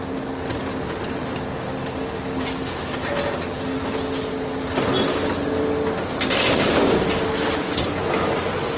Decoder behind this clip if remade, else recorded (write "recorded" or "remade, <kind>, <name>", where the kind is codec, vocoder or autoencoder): recorded